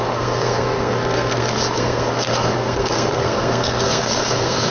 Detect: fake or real fake